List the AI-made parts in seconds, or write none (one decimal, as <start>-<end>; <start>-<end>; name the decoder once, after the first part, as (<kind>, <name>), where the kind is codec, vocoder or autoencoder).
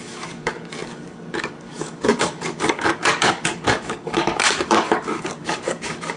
0.0-6.2 (codec, DAC)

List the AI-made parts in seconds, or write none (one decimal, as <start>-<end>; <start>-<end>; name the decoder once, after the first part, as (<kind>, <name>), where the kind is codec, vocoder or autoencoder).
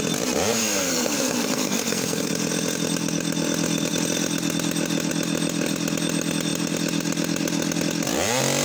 0.6-2.3 (codec, SNAC)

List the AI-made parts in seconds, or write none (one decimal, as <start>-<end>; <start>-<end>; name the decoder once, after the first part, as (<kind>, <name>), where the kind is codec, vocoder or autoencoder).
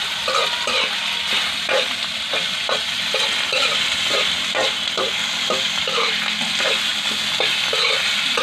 none